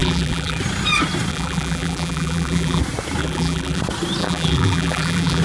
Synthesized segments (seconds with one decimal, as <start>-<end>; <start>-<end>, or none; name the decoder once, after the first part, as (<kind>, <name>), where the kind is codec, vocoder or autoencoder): 0.0-0.6 (vocoder, BigVGAN v2); 1.3-2.8; 3.2-3.8; 4.2-5.4